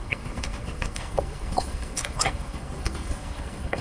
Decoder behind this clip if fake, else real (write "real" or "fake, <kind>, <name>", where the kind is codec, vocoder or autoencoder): fake, codec, SNAC